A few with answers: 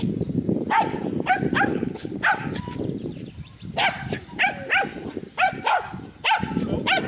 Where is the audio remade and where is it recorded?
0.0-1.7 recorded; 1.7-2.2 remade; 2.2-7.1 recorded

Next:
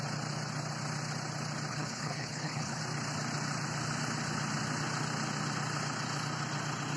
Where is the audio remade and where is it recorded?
0.0-1.7 recorded; 1.7-2.8 remade; 2.8-7.0 recorded

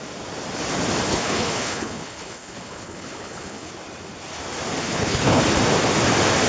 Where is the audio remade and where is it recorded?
0.0-1.1 recorded; 1.1-3.7 remade; 3.7-4.8 recorded; 4.8-5.4 remade; 5.4-6.5 recorded